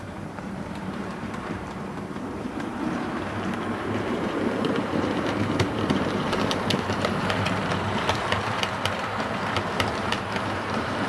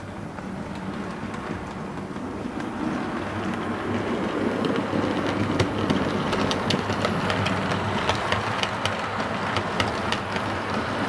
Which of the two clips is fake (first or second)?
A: first